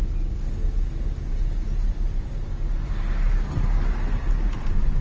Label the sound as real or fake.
real